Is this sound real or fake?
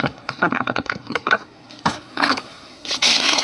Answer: fake